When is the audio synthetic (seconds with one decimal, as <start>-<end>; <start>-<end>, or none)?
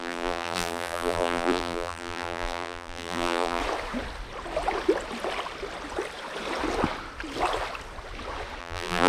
0.0-3.6; 8.6-9.1